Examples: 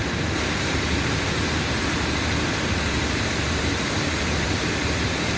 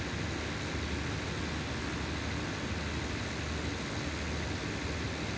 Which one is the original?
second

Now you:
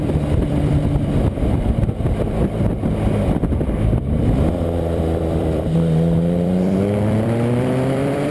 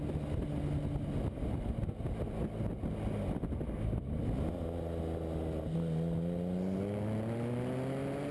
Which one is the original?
second